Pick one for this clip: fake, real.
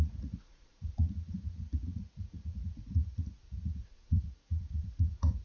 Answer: fake